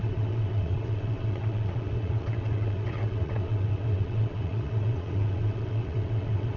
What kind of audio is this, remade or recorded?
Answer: remade